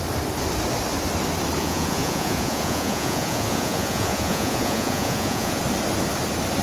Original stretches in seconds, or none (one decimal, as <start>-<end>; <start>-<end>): 0.0-1.6; 5.6-6.6